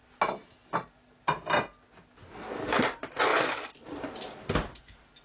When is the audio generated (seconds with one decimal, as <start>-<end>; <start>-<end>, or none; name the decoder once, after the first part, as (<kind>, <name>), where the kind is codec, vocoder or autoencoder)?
none